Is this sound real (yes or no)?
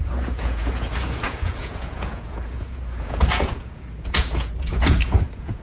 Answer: no